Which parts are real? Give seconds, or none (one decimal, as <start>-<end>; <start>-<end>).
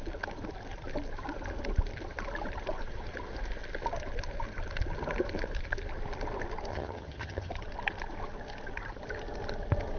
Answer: 0.0-6.7; 7.5-10.0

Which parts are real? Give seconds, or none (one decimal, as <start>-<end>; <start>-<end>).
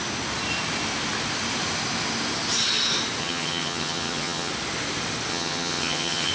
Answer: 0.0-3.2; 4.5-5.3